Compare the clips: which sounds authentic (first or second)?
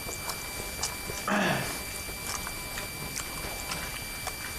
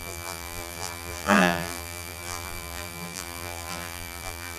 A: first